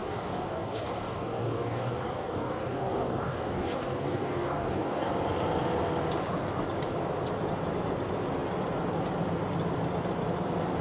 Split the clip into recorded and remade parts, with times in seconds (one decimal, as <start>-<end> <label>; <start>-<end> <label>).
0.0-5.1 remade; 5.1-10.8 recorded